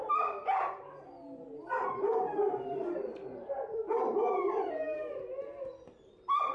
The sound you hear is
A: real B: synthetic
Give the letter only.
B